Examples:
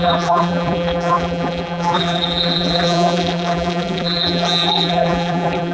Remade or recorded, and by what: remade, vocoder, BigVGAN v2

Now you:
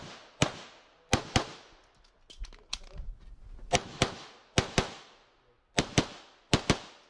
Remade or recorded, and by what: recorded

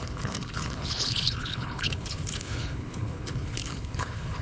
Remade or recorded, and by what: remade, codec, HILCodec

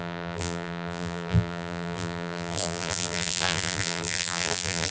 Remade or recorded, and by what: remade, vocoder, BigVGAN v2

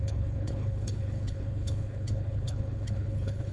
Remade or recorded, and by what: remade, codec, HILCodec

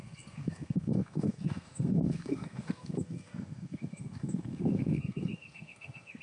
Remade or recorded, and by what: remade, codec, SNAC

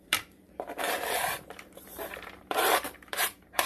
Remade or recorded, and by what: remade, vocoder, BigVGAN v2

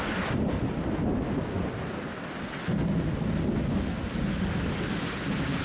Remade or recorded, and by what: recorded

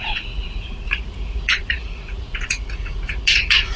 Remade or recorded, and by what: remade, vocoder, Vocos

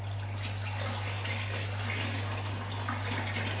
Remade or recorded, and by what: recorded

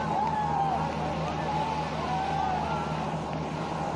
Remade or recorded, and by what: recorded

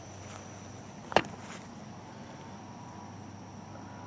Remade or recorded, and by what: recorded